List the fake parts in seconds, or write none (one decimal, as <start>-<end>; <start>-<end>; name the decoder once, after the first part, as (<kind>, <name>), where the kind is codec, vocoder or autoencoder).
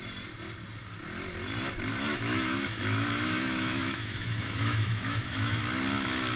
1.9-5.6 (autoencoder, DAC-VAE)